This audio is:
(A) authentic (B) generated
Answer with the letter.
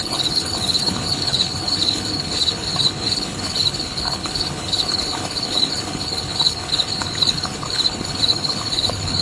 B